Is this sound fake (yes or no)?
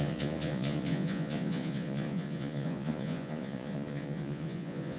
yes